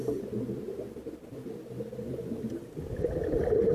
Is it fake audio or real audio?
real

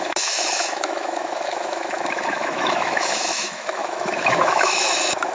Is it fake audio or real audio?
fake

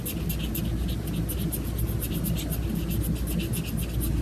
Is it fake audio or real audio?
real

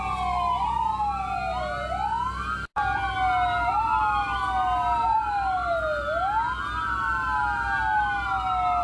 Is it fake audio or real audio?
real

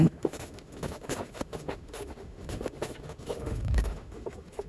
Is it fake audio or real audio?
fake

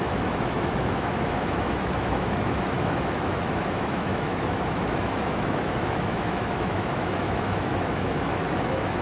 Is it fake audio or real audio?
fake